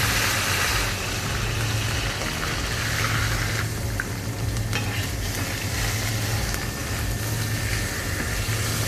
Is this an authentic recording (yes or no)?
yes